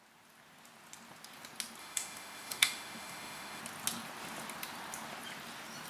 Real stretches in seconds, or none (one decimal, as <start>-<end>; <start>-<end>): 0.0-1.8; 3.6-5.9

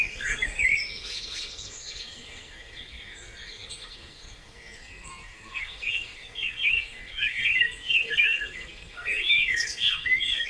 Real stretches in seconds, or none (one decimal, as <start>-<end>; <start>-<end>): none

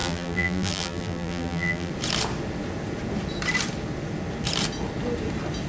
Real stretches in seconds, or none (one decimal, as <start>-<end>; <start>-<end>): 1.9-5.7

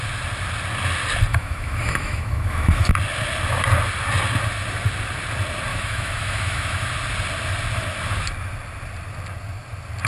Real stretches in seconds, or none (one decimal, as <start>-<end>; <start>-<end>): 0.0-1.3; 2.9-5.7; 6.9-10.1

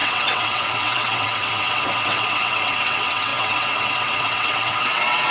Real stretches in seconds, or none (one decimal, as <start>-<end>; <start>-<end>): none

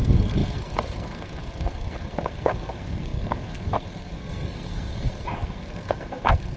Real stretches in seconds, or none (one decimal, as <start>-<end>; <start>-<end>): none